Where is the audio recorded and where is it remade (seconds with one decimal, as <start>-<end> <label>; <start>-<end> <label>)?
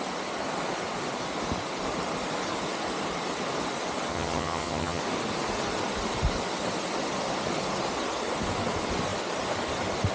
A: 0.0-4.1 recorded; 4.1-5.0 remade; 5.0-10.1 recorded